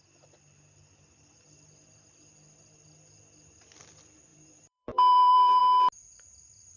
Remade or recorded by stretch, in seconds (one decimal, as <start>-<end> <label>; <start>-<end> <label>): 0.0-4.3 recorded; 4.3-5.6 remade; 5.6-6.8 recorded